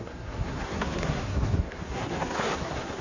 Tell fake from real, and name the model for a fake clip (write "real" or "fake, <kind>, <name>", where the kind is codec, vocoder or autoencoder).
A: fake, codec, SNAC